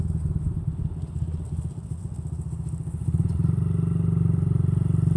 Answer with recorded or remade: recorded